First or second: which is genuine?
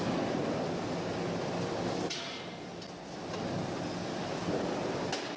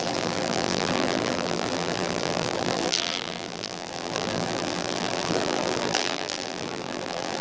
first